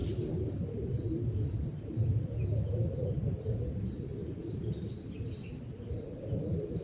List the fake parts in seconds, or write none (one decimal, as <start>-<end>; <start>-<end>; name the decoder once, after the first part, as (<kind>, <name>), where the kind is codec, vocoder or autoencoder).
none